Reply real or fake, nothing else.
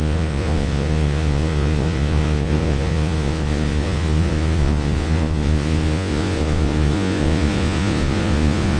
fake